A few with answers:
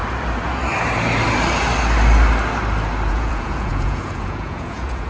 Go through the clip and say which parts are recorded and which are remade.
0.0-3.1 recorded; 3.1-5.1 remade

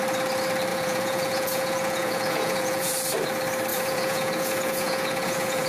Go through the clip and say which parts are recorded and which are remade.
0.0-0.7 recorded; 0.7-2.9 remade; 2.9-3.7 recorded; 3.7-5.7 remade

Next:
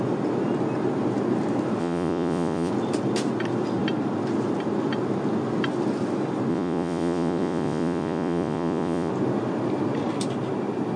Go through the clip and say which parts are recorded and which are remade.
0.0-1.8 recorded; 1.8-2.7 remade; 2.7-6.5 recorded; 6.5-9.1 remade; 9.1-11.0 recorded

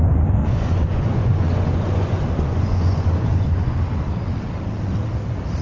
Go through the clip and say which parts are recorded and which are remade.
0.0-0.4 recorded; 0.4-3.8 remade; 3.8-5.6 recorded

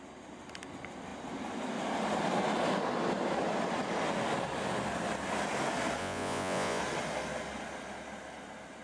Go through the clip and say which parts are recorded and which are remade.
0.0-6.0 recorded; 6.0-6.8 remade; 6.8-8.8 recorded

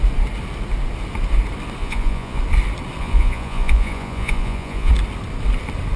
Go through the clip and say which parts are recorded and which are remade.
0.0-1.8 recorded; 1.8-2.4 remade; 2.4-3.0 recorded; 3.0-4.9 remade; 4.9-6.0 recorded

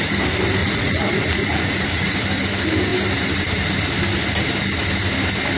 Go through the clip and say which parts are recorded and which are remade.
0.0-0.6 recorded; 0.6-2.1 remade; 2.1-5.6 recorded

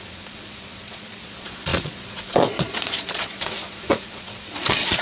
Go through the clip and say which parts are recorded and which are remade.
0.0-5.0 remade